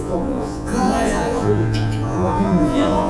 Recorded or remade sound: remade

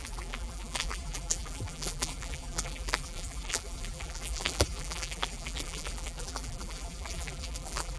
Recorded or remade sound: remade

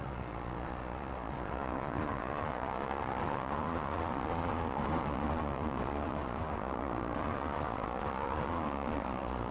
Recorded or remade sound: remade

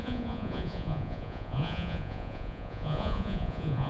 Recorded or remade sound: remade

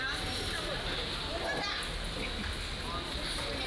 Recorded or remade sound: recorded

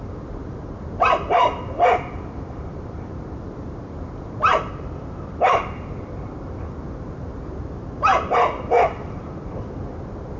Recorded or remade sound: remade